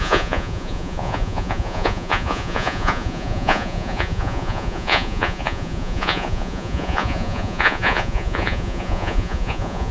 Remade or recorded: remade